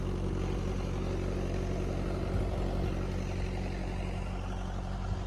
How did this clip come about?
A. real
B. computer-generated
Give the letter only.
A